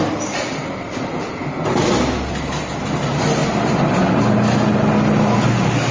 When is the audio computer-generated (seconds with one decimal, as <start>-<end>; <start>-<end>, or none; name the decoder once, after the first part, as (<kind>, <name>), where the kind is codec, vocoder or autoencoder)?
none